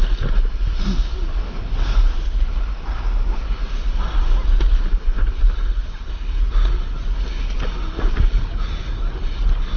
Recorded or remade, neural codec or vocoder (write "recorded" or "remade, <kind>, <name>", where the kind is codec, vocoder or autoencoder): recorded